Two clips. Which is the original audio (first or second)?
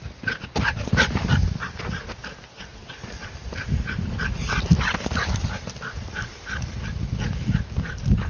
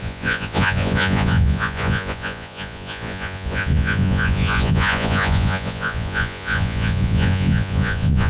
first